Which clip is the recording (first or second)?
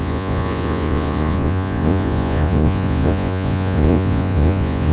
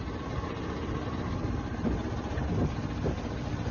second